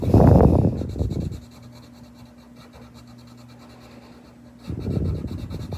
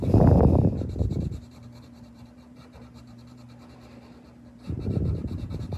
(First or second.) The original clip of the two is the first